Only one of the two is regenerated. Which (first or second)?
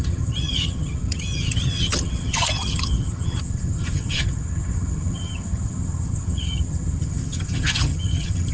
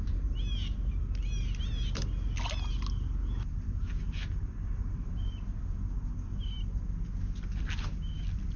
first